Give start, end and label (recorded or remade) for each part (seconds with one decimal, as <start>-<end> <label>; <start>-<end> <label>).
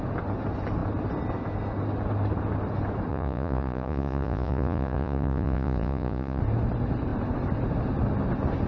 0.0-3.1 recorded; 3.1-6.4 remade; 6.4-8.7 recorded